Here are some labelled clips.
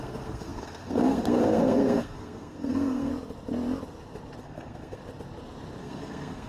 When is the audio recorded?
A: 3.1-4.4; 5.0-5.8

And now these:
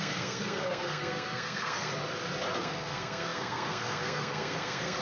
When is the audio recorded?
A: 1.9-2.6

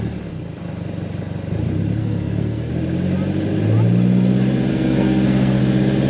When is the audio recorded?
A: 0.0-2.0; 2.7-4.7; 5.6-6.1

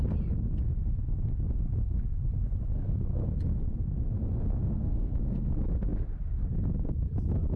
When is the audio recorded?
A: 0.0-2.7; 3.3-4.8; 5.5-7.6

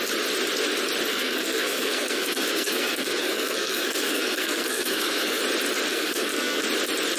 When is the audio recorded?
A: 0.0-1.1; 5.4-5.9; 6.6-7.2

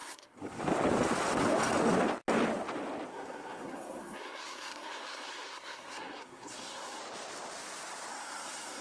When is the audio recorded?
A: 0.6-3.1; 7.0-8.1

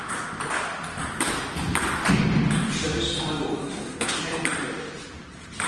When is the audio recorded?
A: 0.0-3.6; 4.2-5.7

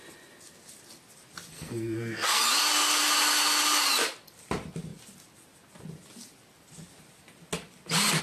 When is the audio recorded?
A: 0.0-1.5; 2.4-8.2